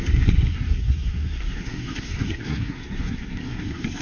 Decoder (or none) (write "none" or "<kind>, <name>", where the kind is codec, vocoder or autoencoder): codec, SNAC